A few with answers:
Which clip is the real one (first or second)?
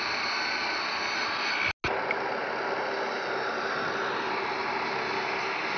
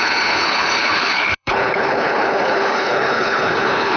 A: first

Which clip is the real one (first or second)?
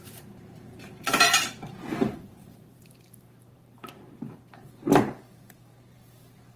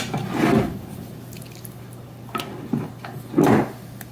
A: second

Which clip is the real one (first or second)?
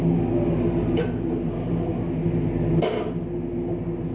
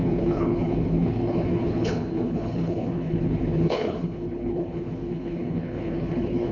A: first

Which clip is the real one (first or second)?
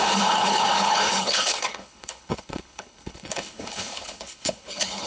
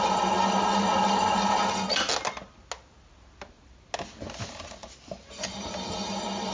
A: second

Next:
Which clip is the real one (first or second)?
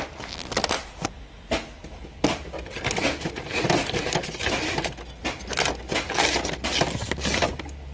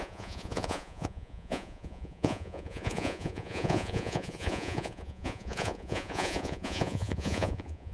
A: first